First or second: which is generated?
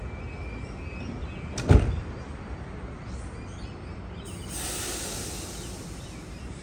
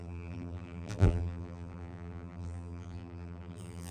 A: second